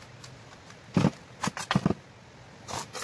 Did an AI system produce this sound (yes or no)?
no